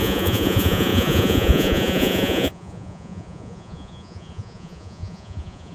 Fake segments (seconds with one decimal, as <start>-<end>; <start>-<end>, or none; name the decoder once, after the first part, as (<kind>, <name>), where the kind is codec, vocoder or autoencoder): 0.0-5.7 (vocoder, Vocos)